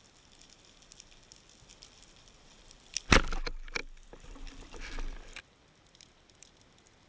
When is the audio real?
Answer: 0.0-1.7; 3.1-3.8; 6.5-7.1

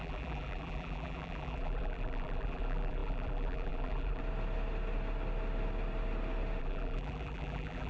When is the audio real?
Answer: 4.2-6.6